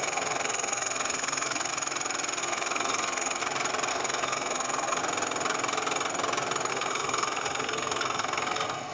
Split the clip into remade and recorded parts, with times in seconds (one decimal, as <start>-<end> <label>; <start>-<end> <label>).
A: 0.0-1.7 remade; 1.7-2.4 recorded; 2.4-3.4 remade; 3.4-3.9 recorded; 3.9-5.0 remade; 5.0-6.7 recorded; 6.7-8.9 remade